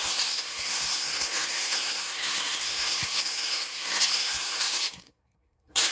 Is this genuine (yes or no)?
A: no